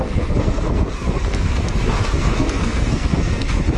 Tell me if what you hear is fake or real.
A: fake